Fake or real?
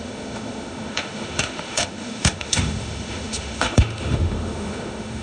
fake